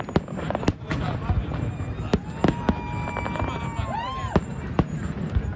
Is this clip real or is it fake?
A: real